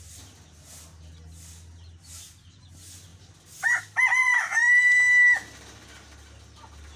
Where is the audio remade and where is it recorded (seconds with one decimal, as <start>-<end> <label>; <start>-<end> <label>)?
0.0-7.0 recorded

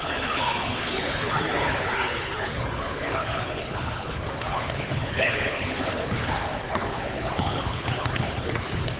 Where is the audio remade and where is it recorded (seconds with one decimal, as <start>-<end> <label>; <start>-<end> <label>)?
0.0-9.0 remade

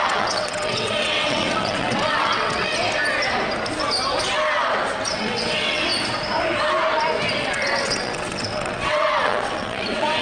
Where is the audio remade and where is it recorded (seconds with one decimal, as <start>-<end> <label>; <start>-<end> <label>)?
0.0-2.7 remade; 2.7-5.1 recorded; 5.1-5.9 remade; 5.9-7.4 recorded; 7.4-10.2 remade

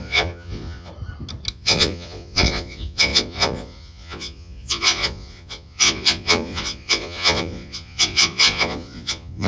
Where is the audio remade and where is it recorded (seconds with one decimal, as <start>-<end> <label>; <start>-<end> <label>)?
0.0-0.9 remade; 0.9-1.5 recorded; 1.5-9.5 remade

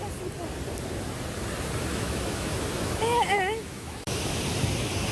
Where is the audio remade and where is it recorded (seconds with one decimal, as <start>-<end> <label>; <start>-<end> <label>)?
0.0-1.9 recorded; 1.9-4.4 remade; 4.4-5.1 recorded